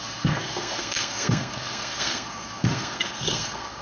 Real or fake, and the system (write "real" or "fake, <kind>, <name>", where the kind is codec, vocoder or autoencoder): fake, codec, SNAC